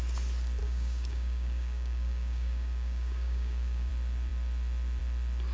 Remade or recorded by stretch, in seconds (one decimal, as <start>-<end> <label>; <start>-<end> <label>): 0.0-0.6 recorded; 0.6-3.9 remade; 3.9-5.5 recorded